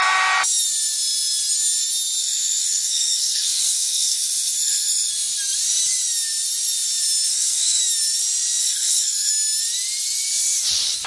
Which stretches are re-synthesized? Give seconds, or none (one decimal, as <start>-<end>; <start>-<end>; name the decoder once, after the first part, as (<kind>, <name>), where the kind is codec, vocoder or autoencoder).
2.2-5.1 (codec, SNAC); 7.3-7.8; 8.6-9.3